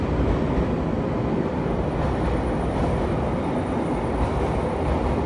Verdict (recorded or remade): recorded